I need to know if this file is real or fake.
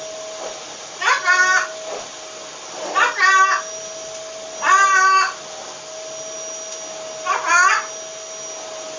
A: real